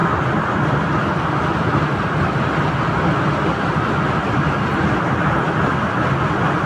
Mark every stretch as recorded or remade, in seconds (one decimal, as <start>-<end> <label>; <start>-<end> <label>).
0.0-6.7 recorded